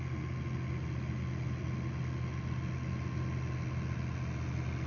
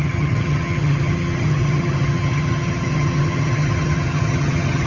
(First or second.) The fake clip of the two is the second